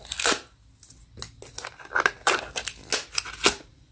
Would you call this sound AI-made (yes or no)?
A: no